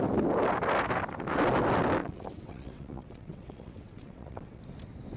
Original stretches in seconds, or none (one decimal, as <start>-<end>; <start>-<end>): 0.0-2.0; 4.6-5.2